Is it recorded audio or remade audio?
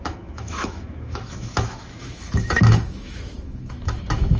remade